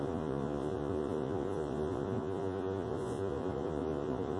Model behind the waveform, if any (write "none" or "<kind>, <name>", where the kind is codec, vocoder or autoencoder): vocoder, Vocos